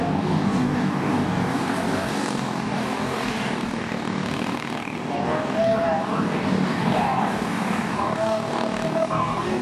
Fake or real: fake